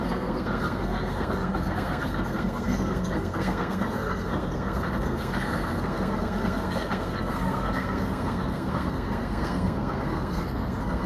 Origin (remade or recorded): remade